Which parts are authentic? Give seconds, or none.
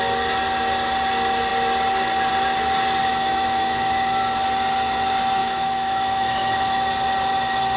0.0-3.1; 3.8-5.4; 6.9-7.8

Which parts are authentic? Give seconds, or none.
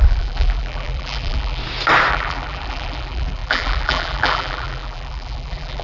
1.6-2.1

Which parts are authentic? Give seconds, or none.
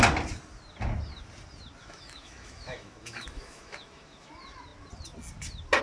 0.0-1.8; 4.3-5.8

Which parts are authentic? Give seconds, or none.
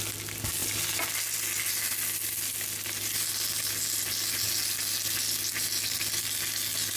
0.0-7.0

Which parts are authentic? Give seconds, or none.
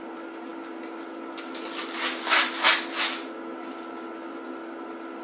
0.0-5.2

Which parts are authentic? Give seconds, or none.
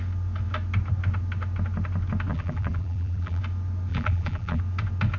0.0-2.3; 3.4-3.9; 4.6-5.2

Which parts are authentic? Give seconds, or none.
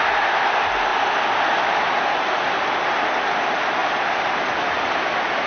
0.0-5.5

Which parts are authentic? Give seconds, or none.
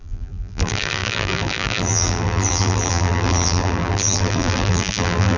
none